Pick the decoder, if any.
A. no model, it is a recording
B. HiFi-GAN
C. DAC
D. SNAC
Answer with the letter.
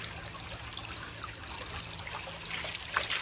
A